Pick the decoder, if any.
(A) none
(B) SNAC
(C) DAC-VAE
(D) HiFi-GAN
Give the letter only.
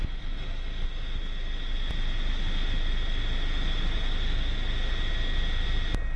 A